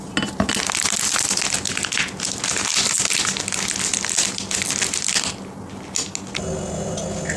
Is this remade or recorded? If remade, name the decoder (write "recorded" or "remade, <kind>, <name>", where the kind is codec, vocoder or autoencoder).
recorded